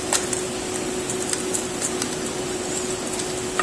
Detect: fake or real real